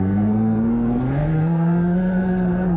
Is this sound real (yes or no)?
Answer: no